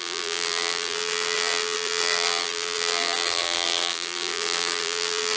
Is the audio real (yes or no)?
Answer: no